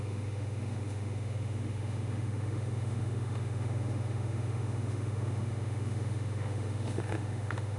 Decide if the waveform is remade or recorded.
remade